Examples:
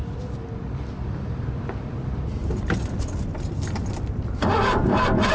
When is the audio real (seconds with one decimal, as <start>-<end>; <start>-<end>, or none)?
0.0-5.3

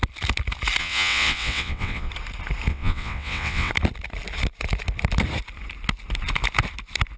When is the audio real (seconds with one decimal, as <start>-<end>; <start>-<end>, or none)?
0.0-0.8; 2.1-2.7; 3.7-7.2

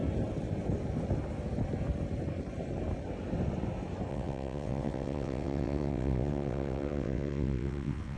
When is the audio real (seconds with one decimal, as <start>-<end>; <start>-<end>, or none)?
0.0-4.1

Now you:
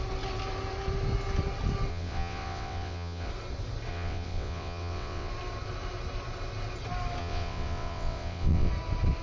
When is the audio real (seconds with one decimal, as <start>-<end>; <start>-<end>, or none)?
0.0-1.9; 3.3-3.9; 5.3-7.2; 8.7-9.2

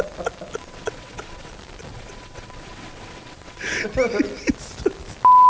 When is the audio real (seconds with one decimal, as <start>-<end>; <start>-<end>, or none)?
0.0-0.6; 1.5-1.9; 3.9-5.5

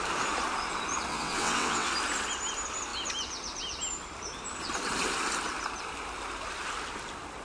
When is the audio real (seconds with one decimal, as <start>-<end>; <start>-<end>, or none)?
0.0-1.1; 1.9-7.4